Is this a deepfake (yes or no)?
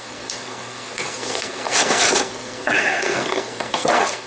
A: yes